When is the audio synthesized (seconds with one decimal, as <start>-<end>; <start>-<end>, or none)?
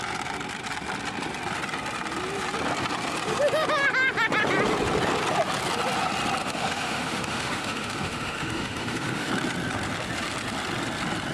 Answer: 6.4-9.3